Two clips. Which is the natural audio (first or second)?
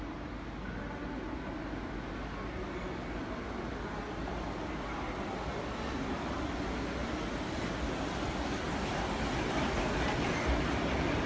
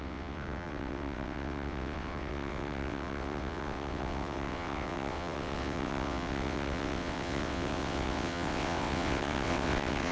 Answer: first